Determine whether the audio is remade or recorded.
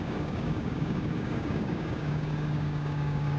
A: remade